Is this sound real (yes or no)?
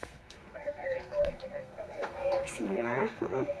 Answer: no